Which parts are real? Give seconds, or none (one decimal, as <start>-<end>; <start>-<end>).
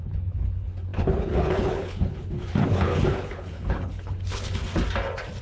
4.6-5.4